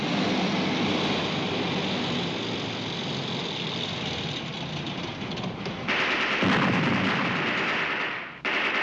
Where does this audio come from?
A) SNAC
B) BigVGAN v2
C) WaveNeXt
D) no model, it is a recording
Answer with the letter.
D